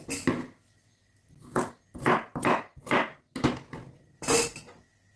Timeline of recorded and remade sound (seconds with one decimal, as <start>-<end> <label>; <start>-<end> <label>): 0.0-5.2 recorded